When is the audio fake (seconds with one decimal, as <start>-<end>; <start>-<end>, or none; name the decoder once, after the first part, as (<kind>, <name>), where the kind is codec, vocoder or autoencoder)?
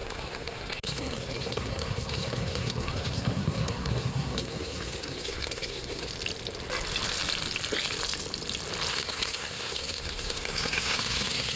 0.0-6.1 (codec, SNAC); 8.9-11.6